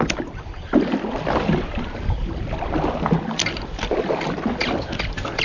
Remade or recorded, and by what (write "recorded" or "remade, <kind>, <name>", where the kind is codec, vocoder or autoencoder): recorded